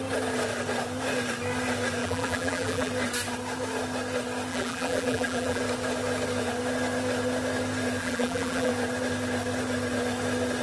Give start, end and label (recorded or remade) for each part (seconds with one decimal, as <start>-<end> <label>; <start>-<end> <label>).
0.0-2.0 recorded; 2.0-2.9 remade; 2.9-4.5 recorded; 4.5-5.6 remade; 5.6-8.0 recorded; 8.0-8.7 remade; 8.7-10.6 recorded